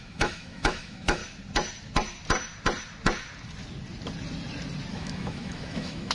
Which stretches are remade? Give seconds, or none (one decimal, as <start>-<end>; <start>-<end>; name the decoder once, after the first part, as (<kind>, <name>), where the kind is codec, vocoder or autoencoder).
0.0-1.2 (autoencoder, DAC-VAE); 4.9-6.1